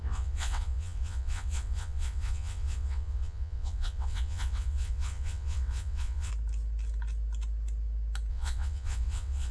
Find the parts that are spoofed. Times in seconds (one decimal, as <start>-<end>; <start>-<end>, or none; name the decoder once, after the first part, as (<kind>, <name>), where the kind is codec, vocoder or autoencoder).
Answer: 0.0-6.3 (vocoder, WaveNeXt); 8.3-9.5